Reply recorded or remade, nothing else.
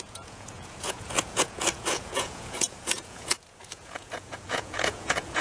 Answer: remade